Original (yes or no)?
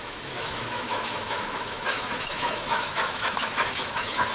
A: no